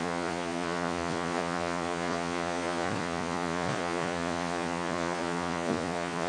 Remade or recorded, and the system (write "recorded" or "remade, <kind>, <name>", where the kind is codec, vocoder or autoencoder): remade, vocoder, Vocos